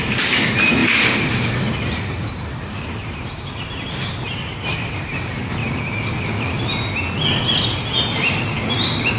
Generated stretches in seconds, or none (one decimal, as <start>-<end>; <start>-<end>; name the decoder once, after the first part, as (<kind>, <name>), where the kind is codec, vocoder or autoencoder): 0.0-5.6 (vocoder, BigVGAN v2); 8.0-8.6